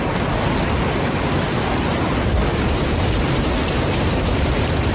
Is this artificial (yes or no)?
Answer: no